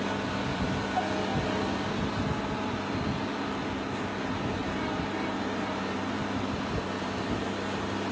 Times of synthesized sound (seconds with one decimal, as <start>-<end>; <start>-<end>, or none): 0.5-1.0; 4.6-8.1